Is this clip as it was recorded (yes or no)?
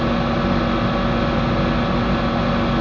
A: yes